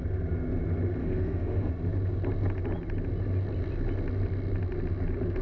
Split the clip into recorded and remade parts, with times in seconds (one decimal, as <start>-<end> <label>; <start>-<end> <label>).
0.0-1.0 recorded; 1.0-1.7 remade; 1.7-5.4 recorded